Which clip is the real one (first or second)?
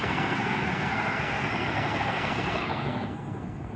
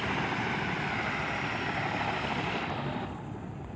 second